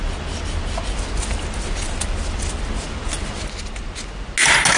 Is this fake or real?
real